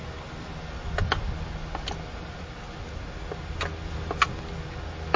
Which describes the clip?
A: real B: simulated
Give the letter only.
A